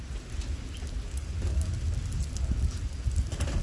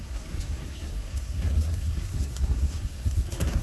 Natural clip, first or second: first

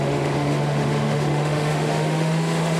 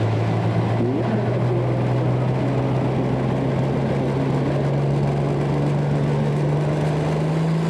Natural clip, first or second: second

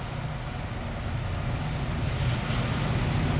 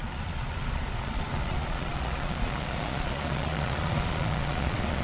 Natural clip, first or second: first